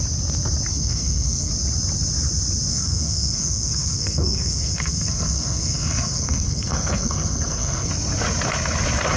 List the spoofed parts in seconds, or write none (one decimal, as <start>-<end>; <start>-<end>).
0.7-1.5; 2.7-7.9